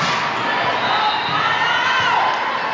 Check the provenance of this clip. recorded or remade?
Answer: recorded